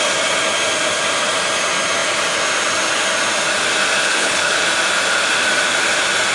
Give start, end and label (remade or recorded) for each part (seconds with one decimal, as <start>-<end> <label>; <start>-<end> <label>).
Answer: 0.0-4.0 recorded; 4.0-4.6 remade; 4.6-6.3 recorded